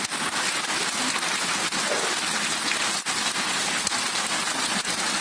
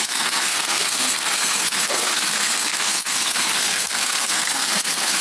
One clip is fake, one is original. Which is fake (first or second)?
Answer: second